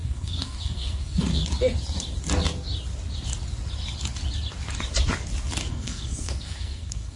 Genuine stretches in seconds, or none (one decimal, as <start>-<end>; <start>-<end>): 1.4-5.7